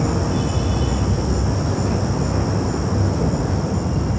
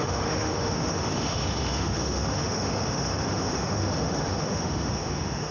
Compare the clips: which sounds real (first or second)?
first